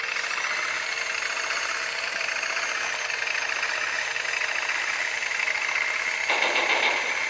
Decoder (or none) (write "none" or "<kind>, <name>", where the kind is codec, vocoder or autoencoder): none